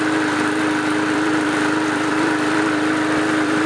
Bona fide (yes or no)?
no